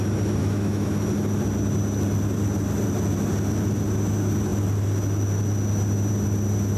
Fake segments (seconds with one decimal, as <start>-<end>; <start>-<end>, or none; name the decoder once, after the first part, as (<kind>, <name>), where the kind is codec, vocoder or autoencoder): 0.4-0.9 (autoencoder, DAC-VAE)